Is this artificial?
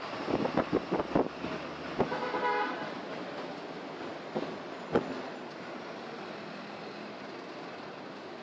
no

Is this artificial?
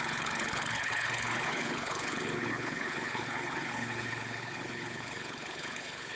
yes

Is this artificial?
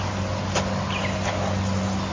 no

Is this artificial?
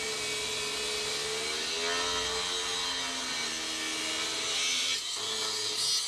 no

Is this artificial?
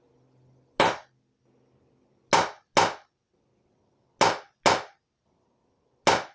no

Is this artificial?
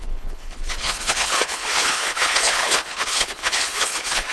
yes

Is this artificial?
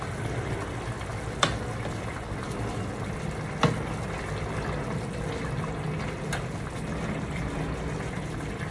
no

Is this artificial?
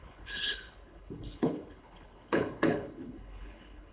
yes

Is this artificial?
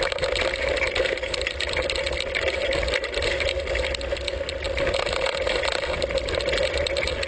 no